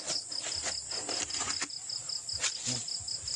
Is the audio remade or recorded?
recorded